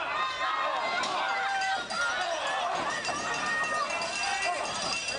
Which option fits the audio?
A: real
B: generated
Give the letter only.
A